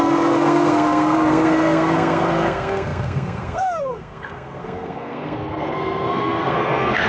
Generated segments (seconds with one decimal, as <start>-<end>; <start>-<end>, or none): 0.0-7.1